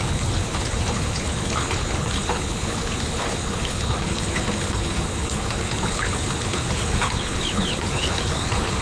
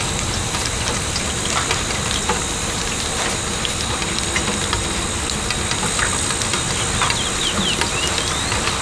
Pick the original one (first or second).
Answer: second